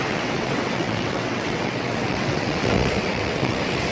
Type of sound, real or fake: fake